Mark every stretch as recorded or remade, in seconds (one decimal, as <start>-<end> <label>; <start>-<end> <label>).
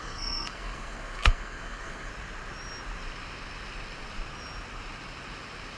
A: 0.0-2.1 remade; 2.1-5.8 recorded